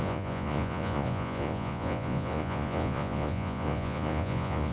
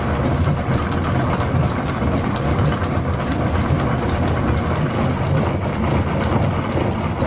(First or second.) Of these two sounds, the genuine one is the second